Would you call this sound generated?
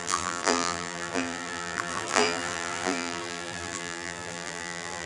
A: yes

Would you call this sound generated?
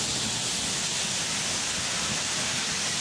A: no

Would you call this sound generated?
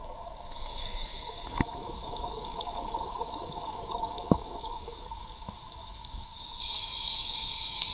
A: yes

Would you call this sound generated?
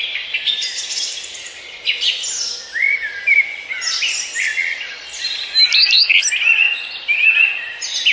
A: no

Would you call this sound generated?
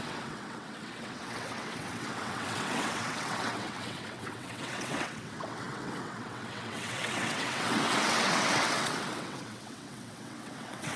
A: yes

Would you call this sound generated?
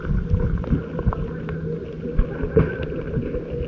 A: no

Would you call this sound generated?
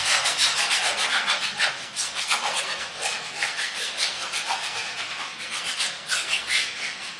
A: yes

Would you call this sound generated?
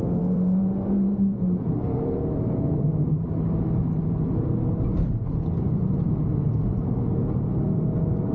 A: yes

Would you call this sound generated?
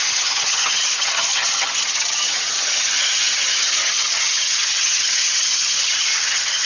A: yes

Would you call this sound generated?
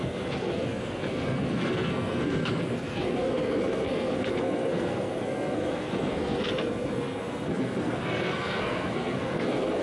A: yes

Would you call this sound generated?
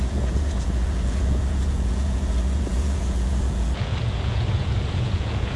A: yes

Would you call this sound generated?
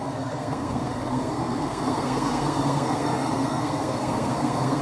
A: yes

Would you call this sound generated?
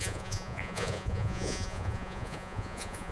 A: yes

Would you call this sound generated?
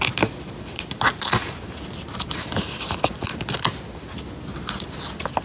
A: no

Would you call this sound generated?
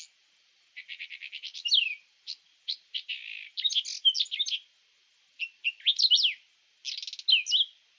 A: no